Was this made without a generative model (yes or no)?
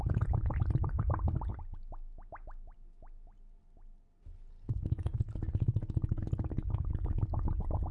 yes